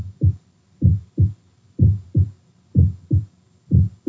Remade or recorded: recorded